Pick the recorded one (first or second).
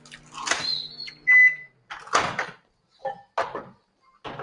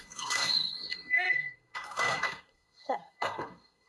first